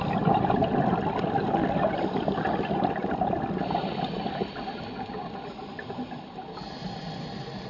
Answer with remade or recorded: recorded